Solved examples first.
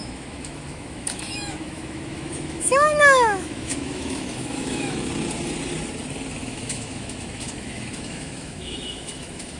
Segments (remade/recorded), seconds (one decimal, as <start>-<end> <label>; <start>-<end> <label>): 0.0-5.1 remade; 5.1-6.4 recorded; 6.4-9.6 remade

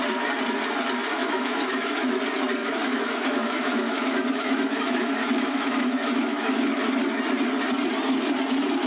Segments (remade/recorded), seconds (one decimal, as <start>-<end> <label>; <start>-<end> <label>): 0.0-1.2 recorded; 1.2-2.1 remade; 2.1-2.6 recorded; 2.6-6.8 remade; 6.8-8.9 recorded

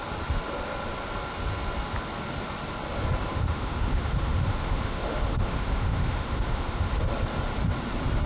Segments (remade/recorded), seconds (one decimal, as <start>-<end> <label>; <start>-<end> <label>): 0.0-3.3 recorded; 3.3-6.9 remade; 6.9-8.3 recorded

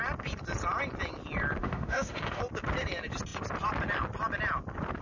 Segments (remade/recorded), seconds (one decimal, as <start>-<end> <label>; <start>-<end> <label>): 0.0-1.6 recorded; 1.6-2.4 remade; 2.4-5.0 recorded